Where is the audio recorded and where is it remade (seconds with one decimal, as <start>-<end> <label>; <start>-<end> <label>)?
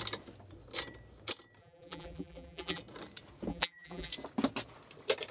0.0-1.6 recorded; 1.6-2.8 remade; 2.8-3.5 recorded; 3.5-4.1 remade; 4.1-5.3 recorded